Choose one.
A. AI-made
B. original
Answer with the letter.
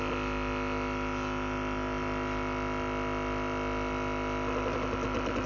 B